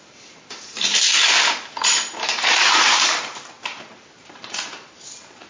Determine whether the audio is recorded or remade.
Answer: remade